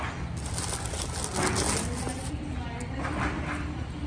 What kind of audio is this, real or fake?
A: real